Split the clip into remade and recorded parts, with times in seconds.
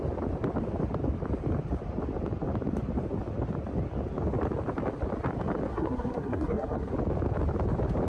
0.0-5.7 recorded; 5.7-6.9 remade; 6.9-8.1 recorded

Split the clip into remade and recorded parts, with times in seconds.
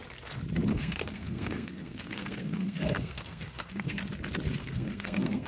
0.0-0.7 recorded; 0.7-4.0 remade; 4.0-4.6 recorded; 4.6-5.5 remade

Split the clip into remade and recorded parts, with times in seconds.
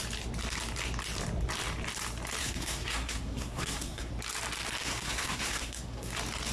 0.0-2.4 recorded; 2.4-4.1 remade; 4.1-4.8 recorded; 4.8-6.1 remade; 6.1-6.5 recorded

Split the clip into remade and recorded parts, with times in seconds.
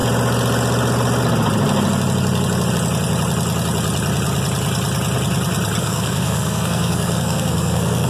0.0-5.8 recorded; 5.8-8.1 remade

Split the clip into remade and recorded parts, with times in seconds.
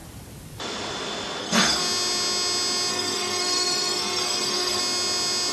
0.0-1.4 recorded; 1.4-1.8 remade; 1.8-2.9 recorded; 2.9-4.8 remade; 4.8-5.5 recorded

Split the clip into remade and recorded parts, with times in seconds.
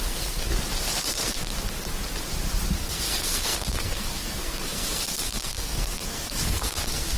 0.0-0.5 remade; 0.5-1.1 recorded; 1.1-1.5 remade; 1.5-2.8 recorded; 2.8-7.2 remade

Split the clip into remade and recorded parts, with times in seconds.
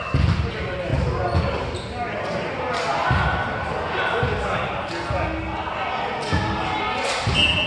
0.0-7.7 recorded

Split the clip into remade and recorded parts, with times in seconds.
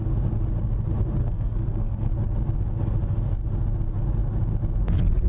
0.0-1.2 recorded; 1.2-2.1 remade; 2.1-5.3 recorded